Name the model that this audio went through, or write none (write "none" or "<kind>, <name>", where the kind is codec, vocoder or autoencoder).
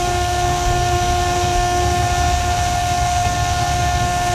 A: codec, SNAC